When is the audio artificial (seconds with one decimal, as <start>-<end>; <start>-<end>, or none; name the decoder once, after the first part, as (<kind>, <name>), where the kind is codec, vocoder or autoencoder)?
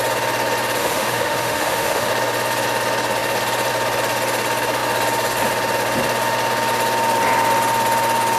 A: 0.8-2.1 (autoencoder, DAC-VAE)